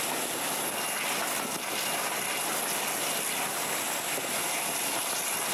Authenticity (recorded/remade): recorded